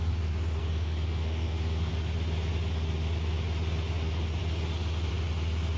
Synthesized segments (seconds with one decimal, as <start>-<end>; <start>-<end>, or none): 0.6-1.9